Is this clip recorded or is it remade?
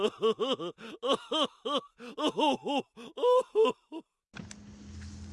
recorded